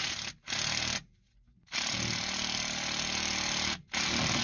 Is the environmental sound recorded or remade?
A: recorded